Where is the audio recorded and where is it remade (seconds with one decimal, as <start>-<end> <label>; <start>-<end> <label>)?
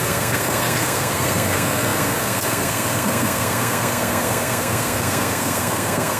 0.0-6.2 remade